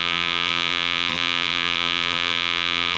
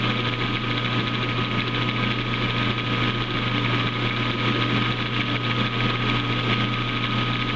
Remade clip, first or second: first